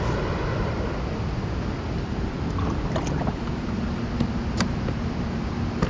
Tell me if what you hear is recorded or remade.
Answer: recorded